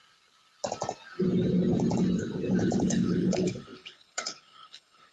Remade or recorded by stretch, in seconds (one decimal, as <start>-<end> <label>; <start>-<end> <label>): 0.0-2.8 recorded; 2.8-5.1 remade